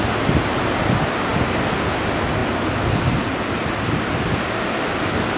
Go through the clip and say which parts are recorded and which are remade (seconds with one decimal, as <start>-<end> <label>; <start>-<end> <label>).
0.0-5.4 recorded